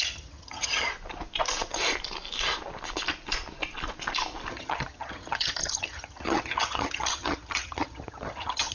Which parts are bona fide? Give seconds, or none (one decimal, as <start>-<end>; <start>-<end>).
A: 0.9-4.5